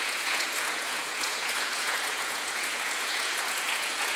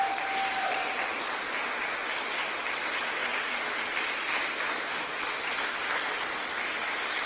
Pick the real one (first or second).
second